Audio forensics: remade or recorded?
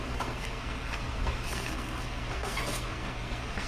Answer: remade